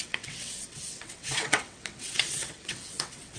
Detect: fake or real fake